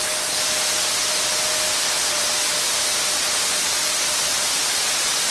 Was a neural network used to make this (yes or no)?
no